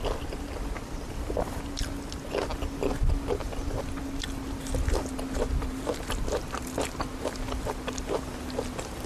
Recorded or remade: recorded